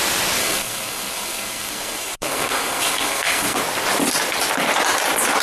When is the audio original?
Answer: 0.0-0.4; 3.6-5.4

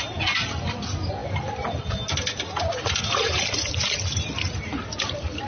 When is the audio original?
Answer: 0.0-5.5